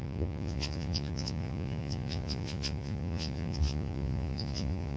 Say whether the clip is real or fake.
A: fake